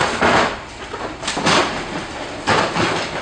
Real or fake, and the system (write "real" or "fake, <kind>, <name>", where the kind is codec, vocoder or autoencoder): real